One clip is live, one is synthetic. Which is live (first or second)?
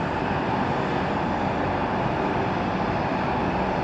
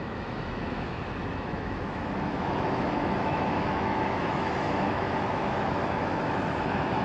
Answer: first